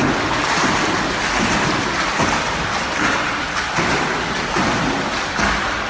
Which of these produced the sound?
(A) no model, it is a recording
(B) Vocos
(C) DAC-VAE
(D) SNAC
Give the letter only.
A